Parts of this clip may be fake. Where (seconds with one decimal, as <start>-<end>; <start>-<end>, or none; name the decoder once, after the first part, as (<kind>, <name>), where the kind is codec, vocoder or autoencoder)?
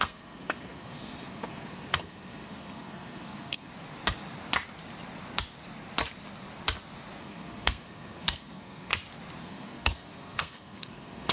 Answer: 0.0-3.7 (codec, SNAC); 7.2-8.9; 9.4-11.3